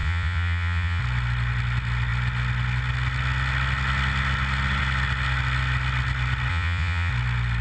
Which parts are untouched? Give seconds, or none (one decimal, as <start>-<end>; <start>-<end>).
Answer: 1.0-6.5; 7.1-7.6